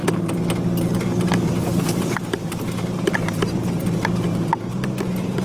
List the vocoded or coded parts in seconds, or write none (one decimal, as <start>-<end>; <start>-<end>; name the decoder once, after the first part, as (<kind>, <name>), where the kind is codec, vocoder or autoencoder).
1.7-3.6 (vocoder, BigVGAN v2)